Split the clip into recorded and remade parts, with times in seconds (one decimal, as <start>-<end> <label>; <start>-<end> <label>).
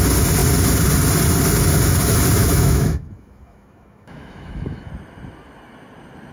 0.0-2.4 recorded; 2.4-4.9 remade; 4.9-6.3 recorded